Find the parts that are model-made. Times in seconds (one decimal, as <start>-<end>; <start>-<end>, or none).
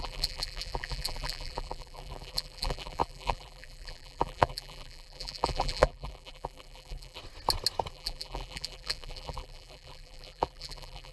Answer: 0.0-7.2; 7.9-11.1